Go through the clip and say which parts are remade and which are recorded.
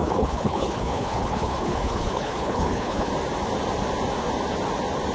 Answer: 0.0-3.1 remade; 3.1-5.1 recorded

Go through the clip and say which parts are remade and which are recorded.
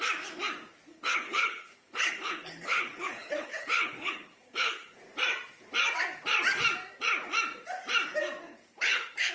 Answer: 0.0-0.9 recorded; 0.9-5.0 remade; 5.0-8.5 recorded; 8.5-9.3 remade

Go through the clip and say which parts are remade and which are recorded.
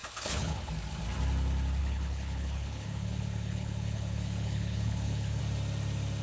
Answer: 0.0-0.7 remade; 0.7-1.8 recorded; 1.8-5.4 remade; 5.4-6.2 recorded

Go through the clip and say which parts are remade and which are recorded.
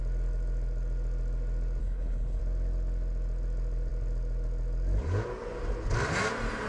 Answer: 0.0-1.8 recorded; 1.8-2.4 remade; 2.4-6.7 recorded